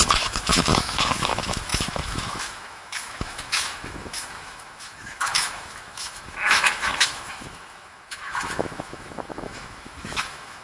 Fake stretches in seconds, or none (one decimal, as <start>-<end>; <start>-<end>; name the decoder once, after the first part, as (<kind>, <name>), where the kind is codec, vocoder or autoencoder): 0.0-10.6 (autoencoder, DAC-VAE)